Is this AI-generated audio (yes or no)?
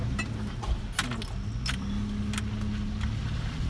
no